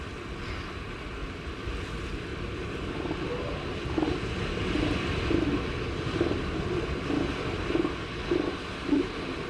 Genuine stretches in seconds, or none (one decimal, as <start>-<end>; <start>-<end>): 0.0-9.5